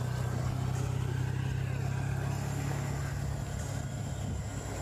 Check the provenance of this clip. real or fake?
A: real